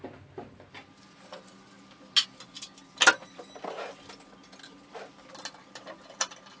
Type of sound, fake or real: real